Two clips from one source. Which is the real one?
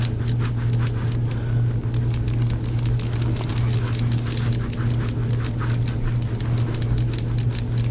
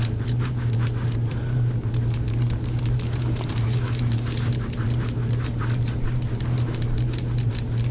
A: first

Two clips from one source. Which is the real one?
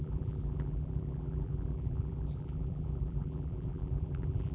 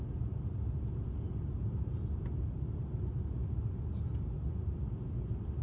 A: second